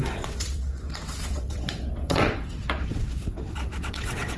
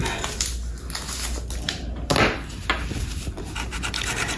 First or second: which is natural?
second